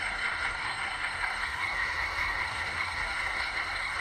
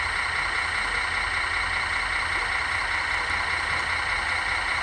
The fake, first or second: first